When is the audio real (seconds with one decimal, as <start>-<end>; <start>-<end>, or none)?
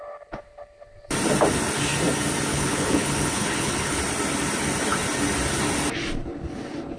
0.0-2.5; 4.0-7.0